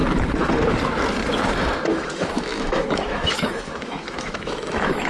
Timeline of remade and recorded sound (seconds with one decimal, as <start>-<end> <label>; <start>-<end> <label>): 0.0-1.9 recorded; 1.9-5.1 remade